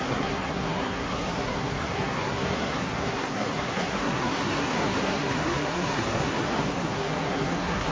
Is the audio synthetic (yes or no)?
yes